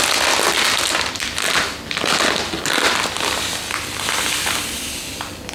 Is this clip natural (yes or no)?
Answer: yes